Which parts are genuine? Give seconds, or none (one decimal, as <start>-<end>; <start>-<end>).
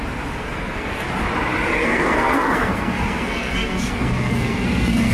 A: 0.0-0.4; 1.1-1.8